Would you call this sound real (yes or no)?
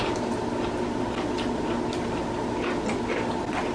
yes